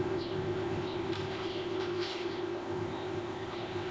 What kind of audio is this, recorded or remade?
remade